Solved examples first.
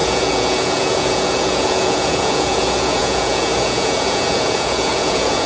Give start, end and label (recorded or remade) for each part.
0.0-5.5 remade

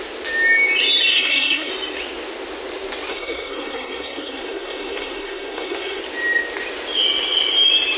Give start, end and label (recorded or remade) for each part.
0.0-1.1 recorded; 1.1-1.7 remade; 1.7-3.1 recorded; 3.1-6.0 remade; 6.0-8.0 recorded

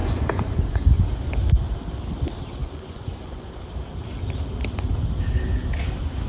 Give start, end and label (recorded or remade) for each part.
0.0-1.0 remade; 1.0-2.6 recorded; 2.6-3.5 remade; 3.5-6.3 recorded

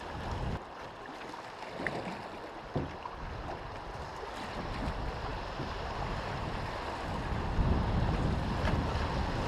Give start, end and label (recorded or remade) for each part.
0.0-5.3 recorded; 5.3-6.7 remade; 6.7-9.5 recorded

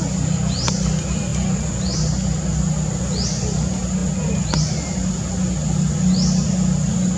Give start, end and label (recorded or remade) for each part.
0.0-7.2 recorded

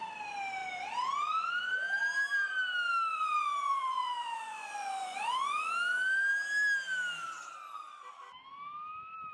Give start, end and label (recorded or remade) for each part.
0.0-3.1 recorded; 3.1-5.7 remade; 5.7-9.3 recorded

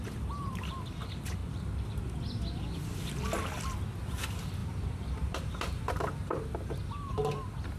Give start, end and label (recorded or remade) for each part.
0.0-1.4 recorded; 1.4-2.0 remade; 2.0-4.6 recorded; 4.6-6.0 remade; 6.0-7.8 recorded

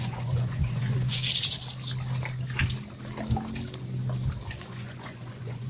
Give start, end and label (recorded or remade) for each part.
0.0-1.2 remade; 1.2-4.6 recorded; 4.6-5.7 remade